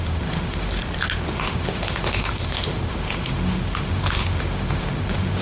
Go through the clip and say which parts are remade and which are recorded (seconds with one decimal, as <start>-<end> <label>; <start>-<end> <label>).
0.0-0.8 remade; 0.8-1.3 recorded; 1.3-5.4 remade